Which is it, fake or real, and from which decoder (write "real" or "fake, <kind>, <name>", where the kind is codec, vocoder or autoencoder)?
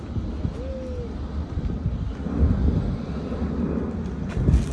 real